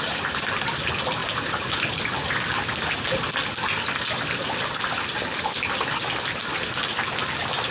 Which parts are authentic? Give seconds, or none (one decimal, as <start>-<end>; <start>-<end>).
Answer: 0.0-1.2; 2.0-7.7

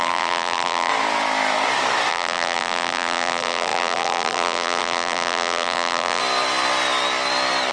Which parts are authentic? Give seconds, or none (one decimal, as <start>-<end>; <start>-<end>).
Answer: 0.9-2.1; 6.2-7.7

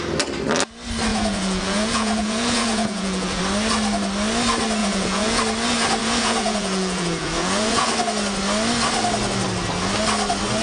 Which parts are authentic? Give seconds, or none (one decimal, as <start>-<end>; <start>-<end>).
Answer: 0.0-1.1; 3.4-4.8; 5.4-6.0; 7.9-10.6

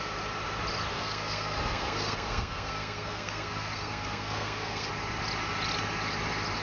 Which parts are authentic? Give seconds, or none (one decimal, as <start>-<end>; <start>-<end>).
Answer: 0.0-0.9; 4.9-6.6

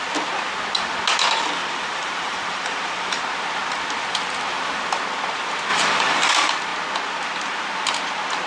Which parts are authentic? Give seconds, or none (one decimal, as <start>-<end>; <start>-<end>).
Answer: 0.0-1.6; 3.2-5.7; 6.3-8.5